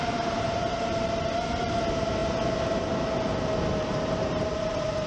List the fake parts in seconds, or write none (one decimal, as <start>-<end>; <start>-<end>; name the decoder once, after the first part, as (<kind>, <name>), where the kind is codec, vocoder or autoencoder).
0.0-2.2 (vocoder, BigVGAN v2); 3.8-5.1